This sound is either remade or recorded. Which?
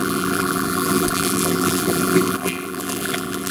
remade